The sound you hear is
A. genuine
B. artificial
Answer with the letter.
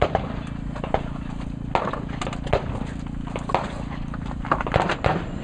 A